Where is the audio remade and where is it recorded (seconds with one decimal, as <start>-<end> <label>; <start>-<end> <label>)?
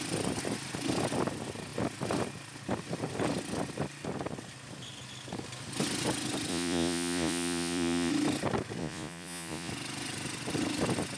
0.0-6.5 recorded; 6.5-8.1 remade; 8.1-8.8 recorded; 8.8-9.7 remade; 9.7-11.2 recorded